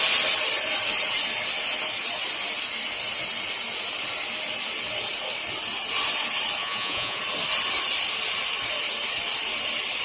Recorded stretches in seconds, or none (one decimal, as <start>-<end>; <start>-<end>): 0.0-6.6; 7.2-10.0